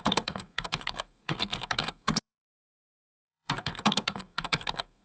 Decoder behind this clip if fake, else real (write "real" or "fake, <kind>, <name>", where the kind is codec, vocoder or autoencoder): fake, codec, SNAC